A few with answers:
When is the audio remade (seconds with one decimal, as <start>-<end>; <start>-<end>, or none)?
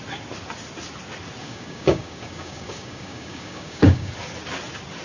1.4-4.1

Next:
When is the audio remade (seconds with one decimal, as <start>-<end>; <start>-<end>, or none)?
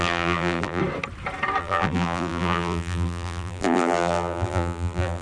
0.0-0.8; 1.6-5.2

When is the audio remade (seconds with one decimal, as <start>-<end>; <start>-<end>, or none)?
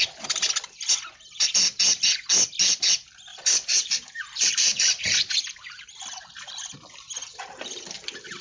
3.3-8.4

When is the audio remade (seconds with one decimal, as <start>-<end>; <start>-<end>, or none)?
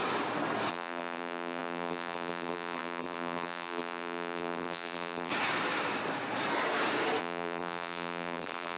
0.7-5.3; 7.2-8.8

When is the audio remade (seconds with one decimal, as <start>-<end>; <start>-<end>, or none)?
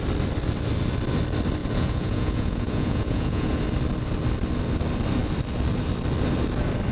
1.6-3.6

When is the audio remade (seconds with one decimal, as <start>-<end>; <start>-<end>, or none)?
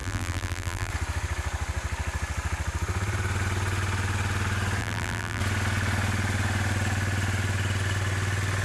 0.0-0.9; 4.8-5.4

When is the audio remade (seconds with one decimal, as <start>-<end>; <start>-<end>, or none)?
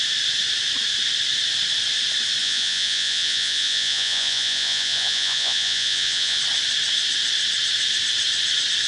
2.4-6.4